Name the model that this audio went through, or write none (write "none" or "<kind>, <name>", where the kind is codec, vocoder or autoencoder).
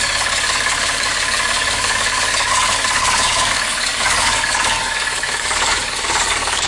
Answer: codec, DAC